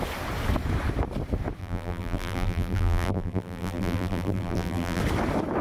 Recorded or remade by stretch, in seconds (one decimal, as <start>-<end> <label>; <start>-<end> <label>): 0.0-1.6 recorded; 1.6-5.0 remade; 5.0-5.6 recorded